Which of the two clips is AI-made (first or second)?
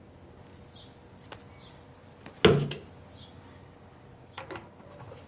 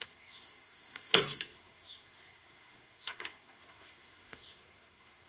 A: second